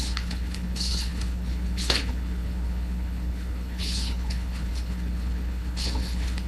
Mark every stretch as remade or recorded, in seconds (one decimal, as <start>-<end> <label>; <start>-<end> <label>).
0.0-6.5 remade